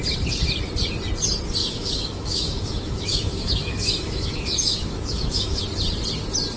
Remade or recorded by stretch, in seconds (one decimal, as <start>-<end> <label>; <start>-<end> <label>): 0.0-1.6 recorded; 1.6-5.6 remade; 5.6-6.6 recorded